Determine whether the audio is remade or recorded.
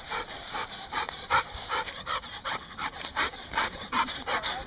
remade